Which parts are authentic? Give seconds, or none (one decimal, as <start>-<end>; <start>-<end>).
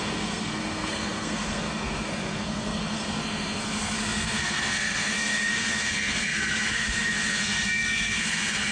none